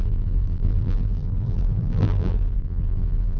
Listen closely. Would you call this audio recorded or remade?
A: remade